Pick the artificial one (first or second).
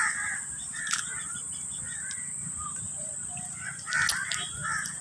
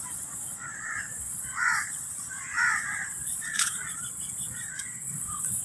second